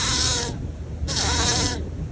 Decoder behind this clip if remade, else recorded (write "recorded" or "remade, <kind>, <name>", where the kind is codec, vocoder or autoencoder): recorded